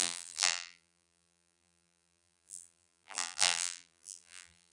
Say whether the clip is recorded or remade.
remade